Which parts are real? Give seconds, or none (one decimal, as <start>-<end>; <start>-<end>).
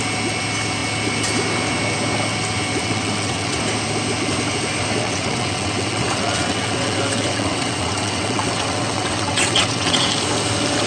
0.0-2.8; 3.6-5.0; 10.1-10.9